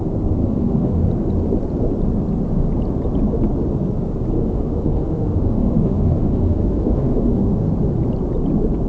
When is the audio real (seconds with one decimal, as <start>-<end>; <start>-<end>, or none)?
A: 0.0-0.4; 1.1-4.4; 7.7-8.9